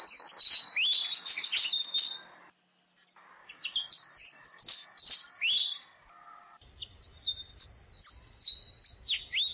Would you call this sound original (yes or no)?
yes